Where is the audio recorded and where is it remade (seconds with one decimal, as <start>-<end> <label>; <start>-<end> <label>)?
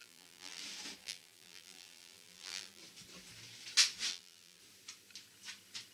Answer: 0.0-0.6 remade; 0.6-1.0 recorded; 1.0-2.8 remade; 2.8-4.1 recorded; 4.1-4.6 remade; 4.6-5.9 recorded